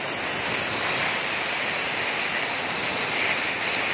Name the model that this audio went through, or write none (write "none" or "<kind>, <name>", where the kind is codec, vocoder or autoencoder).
none